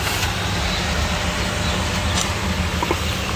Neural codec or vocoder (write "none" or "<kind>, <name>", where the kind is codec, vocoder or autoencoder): none